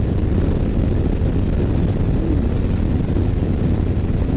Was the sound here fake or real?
real